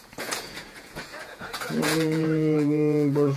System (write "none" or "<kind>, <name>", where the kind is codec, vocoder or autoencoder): vocoder, Vocos